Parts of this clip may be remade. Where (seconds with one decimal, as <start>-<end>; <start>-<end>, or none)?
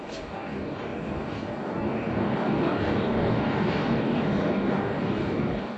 0.0-5.8